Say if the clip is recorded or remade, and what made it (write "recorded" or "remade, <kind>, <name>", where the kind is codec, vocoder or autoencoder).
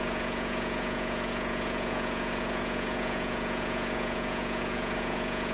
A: remade, vocoder, Vocos